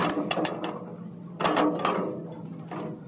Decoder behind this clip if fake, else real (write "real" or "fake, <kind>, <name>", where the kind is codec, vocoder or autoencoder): real